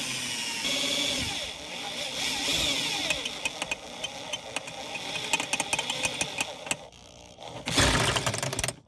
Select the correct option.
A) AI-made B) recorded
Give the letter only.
B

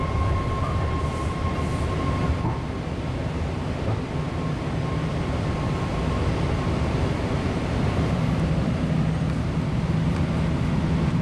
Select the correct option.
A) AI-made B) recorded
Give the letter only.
B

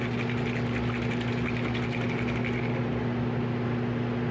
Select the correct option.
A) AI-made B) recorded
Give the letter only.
B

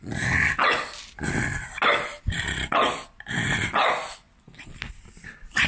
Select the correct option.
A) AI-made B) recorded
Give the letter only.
B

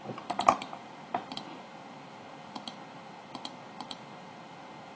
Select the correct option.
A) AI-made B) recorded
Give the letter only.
B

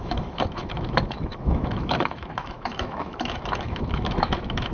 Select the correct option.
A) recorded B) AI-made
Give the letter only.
B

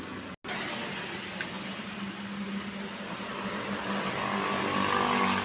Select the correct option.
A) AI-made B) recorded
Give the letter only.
B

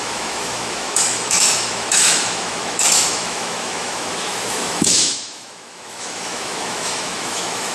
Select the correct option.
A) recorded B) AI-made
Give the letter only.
B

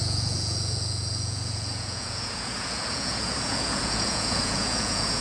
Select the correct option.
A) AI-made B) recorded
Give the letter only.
A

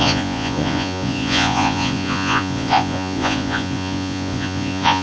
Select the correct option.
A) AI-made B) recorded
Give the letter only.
A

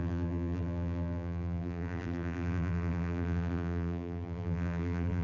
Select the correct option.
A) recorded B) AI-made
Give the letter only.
B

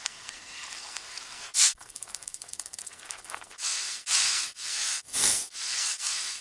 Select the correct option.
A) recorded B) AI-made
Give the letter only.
B